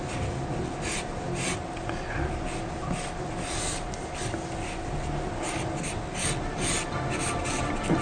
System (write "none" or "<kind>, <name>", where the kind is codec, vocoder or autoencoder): none